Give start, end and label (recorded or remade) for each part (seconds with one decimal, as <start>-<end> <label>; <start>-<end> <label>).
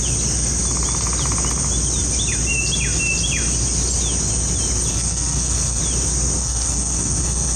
0.0-4.9 recorded; 4.9-5.8 remade; 5.8-6.4 recorded; 6.4-7.6 remade